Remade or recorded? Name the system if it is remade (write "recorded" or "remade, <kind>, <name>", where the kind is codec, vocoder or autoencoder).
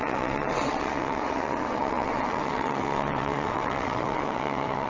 remade, vocoder, WaveNeXt